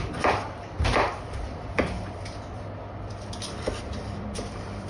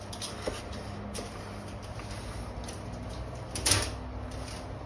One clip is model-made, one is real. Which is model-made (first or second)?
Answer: first